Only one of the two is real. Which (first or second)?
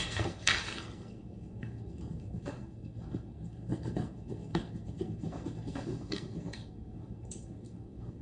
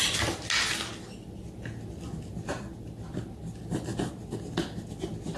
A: second